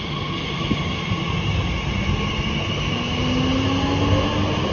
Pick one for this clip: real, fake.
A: real